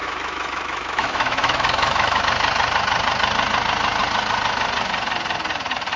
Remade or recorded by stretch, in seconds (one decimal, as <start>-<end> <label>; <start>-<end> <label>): 0.0-2.2 remade; 2.2-6.0 recorded